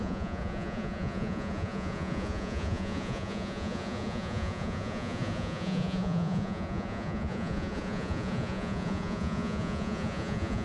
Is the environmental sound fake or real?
fake